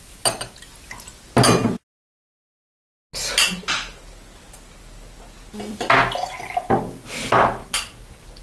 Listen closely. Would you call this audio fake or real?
real